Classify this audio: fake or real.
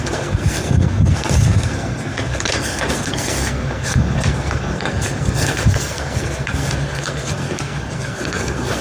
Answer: fake